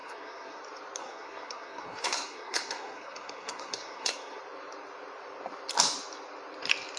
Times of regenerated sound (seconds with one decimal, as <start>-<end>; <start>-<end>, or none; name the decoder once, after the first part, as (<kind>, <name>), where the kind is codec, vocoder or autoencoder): 0.0-0.6 (codec, SNAC); 1.0-4.4